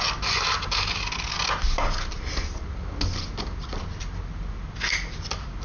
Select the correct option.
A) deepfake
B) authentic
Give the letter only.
B